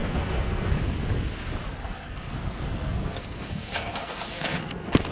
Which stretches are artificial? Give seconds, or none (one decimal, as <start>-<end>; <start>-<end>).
0.0-0.8; 1.7-5.1